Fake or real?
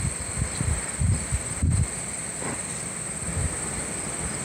real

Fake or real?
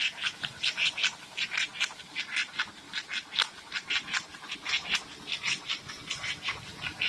fake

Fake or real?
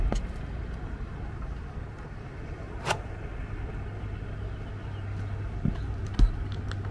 real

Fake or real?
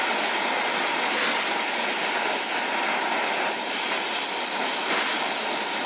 real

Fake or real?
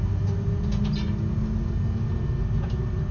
real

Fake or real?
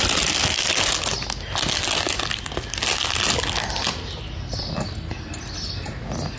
real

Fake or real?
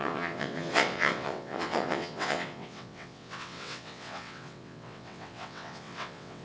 fake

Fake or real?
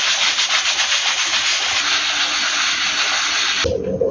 real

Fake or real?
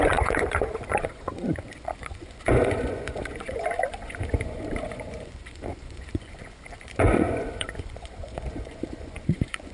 fake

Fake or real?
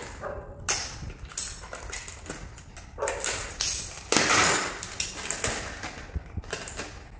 real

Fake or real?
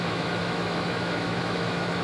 fake